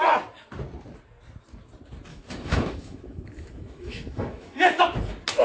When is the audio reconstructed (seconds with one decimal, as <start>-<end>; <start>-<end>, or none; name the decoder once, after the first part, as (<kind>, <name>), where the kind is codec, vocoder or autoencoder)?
2.1-4.8 (autoencoder, DAC-VAE)

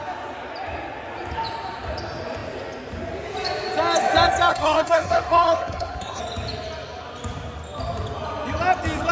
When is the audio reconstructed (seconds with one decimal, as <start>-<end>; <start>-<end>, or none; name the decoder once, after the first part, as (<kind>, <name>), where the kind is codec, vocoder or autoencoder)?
4.5-6.2 (codec, SNAC)

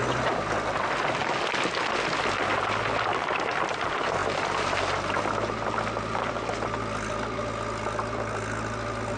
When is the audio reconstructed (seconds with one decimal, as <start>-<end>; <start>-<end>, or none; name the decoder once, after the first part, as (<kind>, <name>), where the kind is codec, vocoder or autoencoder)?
none